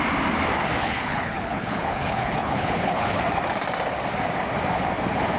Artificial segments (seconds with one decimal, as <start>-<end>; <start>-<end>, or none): 0.8-3.2